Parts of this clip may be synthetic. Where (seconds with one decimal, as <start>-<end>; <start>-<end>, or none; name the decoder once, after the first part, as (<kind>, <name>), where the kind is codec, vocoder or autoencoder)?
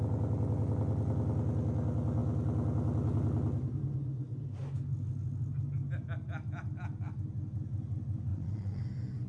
8.3-8.8 (vocoder, Vocos)